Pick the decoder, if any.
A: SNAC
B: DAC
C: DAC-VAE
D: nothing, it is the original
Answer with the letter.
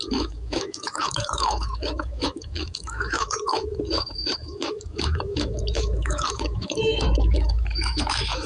C